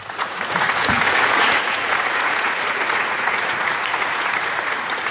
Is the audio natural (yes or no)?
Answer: no